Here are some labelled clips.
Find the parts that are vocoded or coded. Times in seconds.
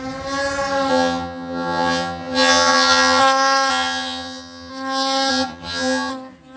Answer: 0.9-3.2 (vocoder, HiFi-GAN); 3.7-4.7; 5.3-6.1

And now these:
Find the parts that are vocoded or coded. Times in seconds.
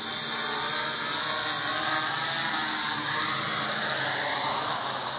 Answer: none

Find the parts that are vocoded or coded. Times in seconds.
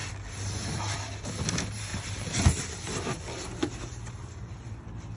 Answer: 1.9-3.1 (vocoder, BigVGAN v2); 3.6-4.7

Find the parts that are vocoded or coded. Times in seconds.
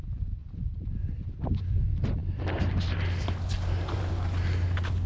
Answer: none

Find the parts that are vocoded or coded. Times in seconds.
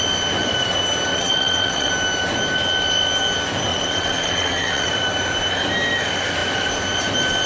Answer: 1.1-1.9 (vocoder, WaveNeXt); 3.7-4.9